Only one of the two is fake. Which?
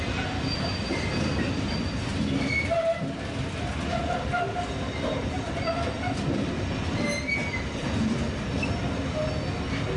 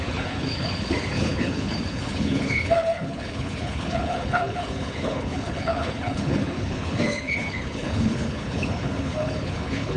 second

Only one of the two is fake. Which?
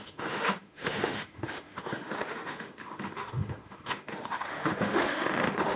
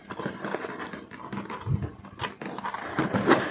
first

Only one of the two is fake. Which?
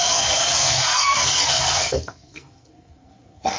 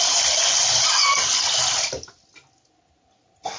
first